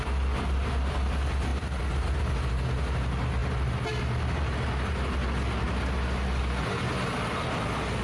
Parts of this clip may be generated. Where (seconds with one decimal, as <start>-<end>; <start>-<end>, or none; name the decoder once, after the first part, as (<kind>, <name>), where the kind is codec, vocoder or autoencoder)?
none